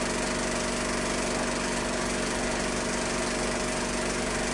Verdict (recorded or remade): recorded